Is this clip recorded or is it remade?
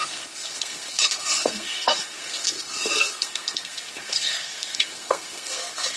remade